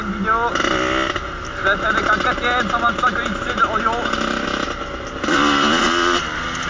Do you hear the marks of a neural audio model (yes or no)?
no